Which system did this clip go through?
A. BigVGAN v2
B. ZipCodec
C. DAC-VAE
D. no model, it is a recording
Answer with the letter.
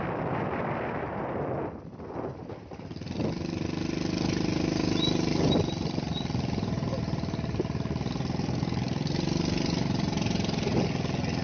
D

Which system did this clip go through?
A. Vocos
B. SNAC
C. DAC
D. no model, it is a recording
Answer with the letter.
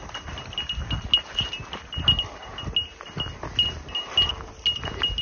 D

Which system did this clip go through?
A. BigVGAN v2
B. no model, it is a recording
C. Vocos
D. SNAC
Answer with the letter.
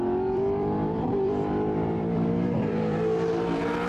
A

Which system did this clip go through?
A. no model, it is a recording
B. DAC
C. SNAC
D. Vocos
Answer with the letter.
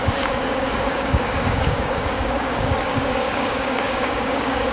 B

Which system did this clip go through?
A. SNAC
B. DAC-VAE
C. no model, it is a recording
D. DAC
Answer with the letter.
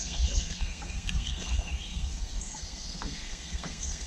A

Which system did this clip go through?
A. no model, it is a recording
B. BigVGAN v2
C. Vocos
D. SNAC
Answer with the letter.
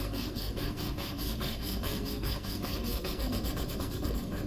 D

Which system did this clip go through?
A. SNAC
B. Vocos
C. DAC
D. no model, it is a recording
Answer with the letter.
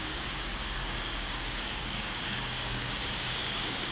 C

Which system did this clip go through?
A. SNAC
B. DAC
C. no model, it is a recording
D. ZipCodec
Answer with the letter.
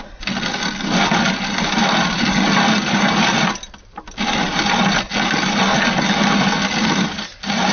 C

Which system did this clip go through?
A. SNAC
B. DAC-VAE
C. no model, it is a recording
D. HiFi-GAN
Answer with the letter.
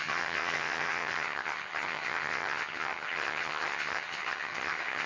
D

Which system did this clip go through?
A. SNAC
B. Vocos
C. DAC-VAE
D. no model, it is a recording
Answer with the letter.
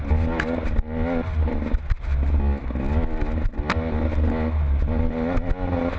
D